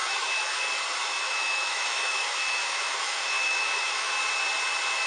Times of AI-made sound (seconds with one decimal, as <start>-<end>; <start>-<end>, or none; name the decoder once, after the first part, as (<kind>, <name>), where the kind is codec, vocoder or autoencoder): 0.0-0.6 (autoencoder, DAC-VAE); 1.0-4.1